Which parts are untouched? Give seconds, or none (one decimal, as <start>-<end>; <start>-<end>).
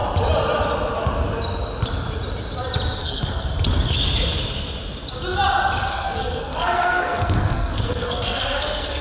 0.0-3.0; 3.5-5.9